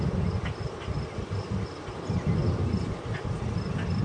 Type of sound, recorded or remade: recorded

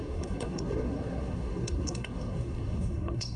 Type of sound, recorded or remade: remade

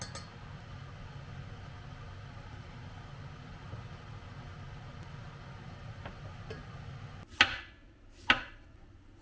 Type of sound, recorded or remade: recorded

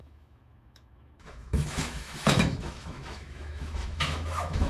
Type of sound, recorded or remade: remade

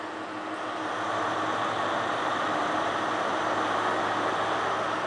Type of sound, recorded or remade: recorded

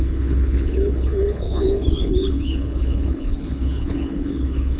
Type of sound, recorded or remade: remade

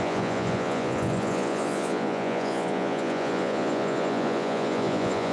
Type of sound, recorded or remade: remade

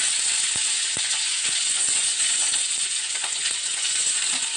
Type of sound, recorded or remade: remade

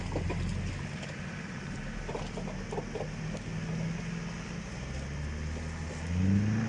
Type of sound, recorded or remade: recorded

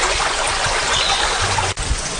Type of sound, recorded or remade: remade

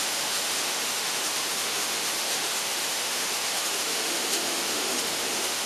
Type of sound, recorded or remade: remade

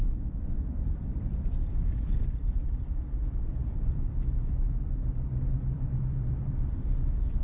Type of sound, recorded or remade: remade